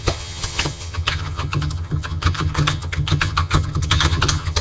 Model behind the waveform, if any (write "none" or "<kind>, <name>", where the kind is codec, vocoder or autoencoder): vocoder, HiFi-GAN